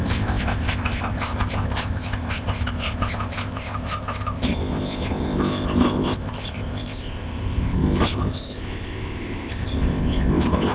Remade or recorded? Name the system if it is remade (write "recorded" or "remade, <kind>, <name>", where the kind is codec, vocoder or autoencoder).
remade, codec, ZipCodec